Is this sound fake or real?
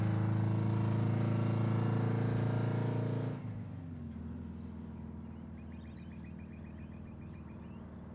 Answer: real